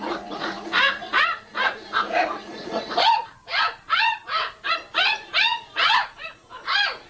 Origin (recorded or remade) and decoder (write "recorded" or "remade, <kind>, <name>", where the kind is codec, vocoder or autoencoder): remade, vocoder, Vocos